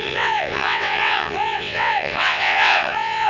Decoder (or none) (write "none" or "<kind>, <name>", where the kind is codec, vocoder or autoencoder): vocoder, WaveNeXt